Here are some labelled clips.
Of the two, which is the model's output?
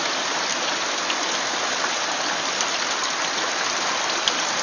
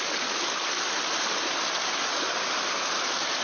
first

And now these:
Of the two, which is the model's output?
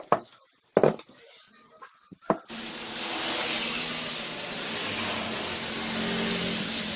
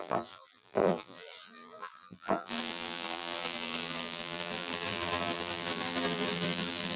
second